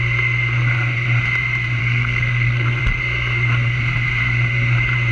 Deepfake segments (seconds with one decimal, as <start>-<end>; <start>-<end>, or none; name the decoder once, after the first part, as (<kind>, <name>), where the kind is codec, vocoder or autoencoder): 1.8-2.8 (codec, SNAC)